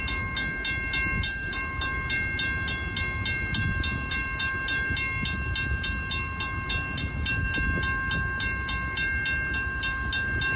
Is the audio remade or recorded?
recorded